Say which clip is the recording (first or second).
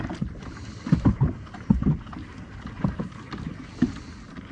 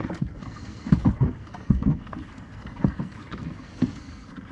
first